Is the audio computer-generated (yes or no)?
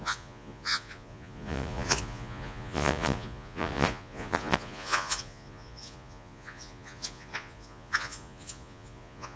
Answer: yes